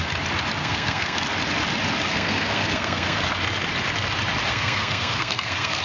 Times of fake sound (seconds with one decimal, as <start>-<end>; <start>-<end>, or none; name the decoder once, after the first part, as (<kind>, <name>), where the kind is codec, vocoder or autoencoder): 0.6-1.2 (codec, SNAC); 2.1-3.2; 4.5-5.8

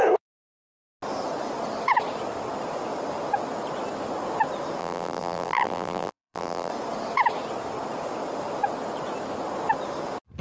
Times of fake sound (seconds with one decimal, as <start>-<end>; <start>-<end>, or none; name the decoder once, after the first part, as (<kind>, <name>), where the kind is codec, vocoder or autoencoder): 4.8-6.7 (vocoder, BigVGAN v2)

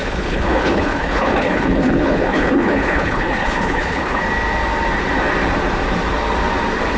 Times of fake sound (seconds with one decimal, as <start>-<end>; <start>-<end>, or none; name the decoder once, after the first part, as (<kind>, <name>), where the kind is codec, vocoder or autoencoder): 0.0-4.2 (codec, HILCodec)

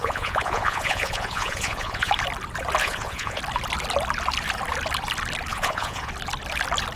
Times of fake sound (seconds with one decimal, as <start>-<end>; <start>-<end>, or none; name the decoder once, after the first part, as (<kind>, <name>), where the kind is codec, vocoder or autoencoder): 0.0-2.1 (vocoder, Vocos); 2.8-3.4; 5.5-6.1

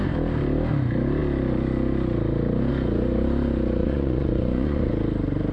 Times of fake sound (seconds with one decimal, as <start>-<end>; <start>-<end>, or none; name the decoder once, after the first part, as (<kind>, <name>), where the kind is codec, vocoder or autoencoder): 3.8-4.9 (vocoder, Vocos)

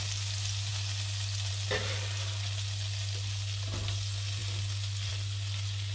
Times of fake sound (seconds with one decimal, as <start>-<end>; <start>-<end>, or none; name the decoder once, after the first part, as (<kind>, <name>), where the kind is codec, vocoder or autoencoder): none